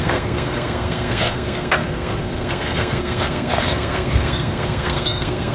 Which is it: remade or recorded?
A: remade